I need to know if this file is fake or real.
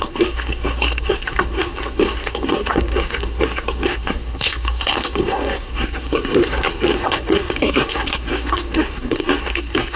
fake